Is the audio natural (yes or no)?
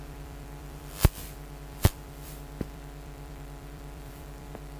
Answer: no